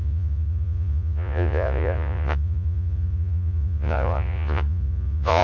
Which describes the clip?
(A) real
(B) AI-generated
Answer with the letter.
B